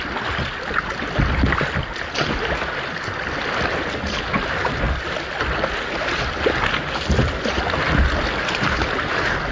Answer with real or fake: real